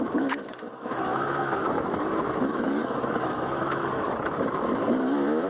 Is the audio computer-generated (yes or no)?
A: yes